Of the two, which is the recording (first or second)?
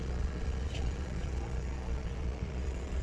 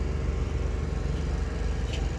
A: second